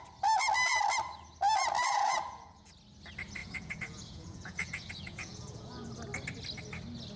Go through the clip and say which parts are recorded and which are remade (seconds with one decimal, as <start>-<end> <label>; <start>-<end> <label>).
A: 0.0-1.9 recorded; 1.9-2.7 remade; 2.7-3.4 recorded; 3.4-5.9 remade; 5.9-7.2 recorded